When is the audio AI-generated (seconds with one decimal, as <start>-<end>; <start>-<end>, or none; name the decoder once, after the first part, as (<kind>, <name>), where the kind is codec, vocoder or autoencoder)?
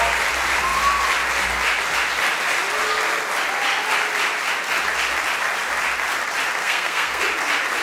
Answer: 6.6-7.2 (codec, SNAC)